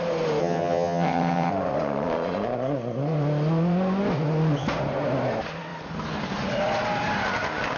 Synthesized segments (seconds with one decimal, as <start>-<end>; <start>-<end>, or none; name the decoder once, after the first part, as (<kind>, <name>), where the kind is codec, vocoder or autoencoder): 0.4-1.5 (vocoder, HiFi-GAN)